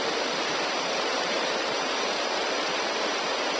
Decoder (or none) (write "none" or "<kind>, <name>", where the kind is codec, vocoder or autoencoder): vocoder, BigVGAN v2